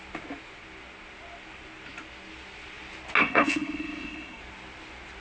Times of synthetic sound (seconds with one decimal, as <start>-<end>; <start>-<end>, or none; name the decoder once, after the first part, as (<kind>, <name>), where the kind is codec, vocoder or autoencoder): 3.2-4.4 (codec, SNAC)